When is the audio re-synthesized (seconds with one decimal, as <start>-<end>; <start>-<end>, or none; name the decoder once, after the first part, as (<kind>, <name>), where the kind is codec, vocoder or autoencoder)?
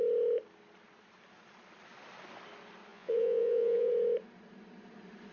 2.9-3.9 (vocoder, Vocos)